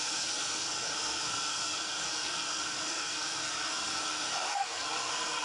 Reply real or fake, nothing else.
fake